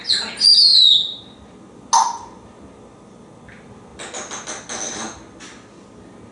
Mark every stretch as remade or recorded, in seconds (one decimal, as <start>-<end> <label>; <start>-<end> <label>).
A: 0.0-6.3 recorded